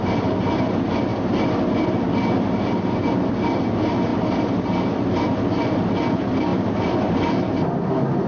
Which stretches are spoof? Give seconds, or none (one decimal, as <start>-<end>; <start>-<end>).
none